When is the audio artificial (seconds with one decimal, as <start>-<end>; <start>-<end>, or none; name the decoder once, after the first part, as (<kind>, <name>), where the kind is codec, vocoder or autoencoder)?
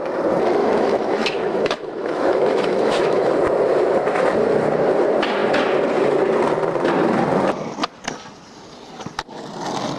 0.6-3.4 (autoencoder, DAC-VAE)